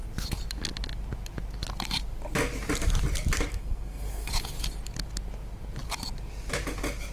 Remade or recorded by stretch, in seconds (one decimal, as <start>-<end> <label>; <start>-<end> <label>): 0.0-3.5 recorded; 3.5-4.3 remade; 4.3-7.1 recorded